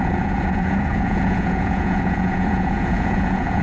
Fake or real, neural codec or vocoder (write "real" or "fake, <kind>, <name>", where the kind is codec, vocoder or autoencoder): fake, vocoder, Vocos